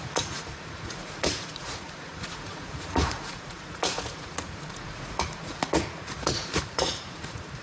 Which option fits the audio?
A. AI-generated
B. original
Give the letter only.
A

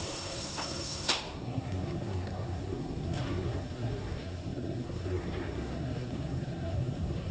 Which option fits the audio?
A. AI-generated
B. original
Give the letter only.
A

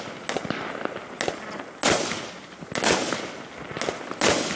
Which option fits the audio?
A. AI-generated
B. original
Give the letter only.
B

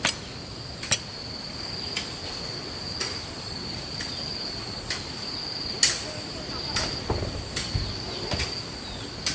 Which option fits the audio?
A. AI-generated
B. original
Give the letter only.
B